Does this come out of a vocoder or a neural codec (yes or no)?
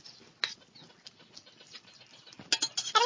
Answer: no